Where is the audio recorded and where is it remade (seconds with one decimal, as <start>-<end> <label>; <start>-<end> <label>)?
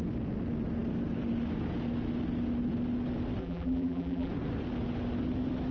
0.0-3.4 recorded; 3.4-4.3 remade; 4.3-5.7 recorded